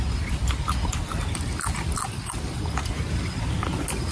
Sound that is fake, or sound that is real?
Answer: real